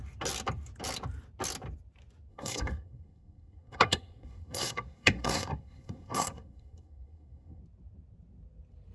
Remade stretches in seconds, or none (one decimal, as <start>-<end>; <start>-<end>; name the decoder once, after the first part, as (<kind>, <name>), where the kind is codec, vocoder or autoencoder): 2.3-7.6 (codec, SNAC)